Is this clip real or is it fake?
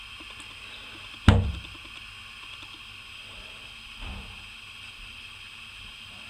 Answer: real